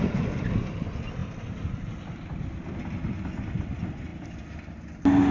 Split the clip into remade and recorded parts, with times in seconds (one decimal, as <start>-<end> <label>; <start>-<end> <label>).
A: 0.0-1.2 recorded; 1.2-2.6 remade; 2.6-4.1 recorded; 4.1-4.8 remade; 4.8-5.3 recorded